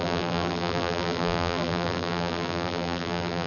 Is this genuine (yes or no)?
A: no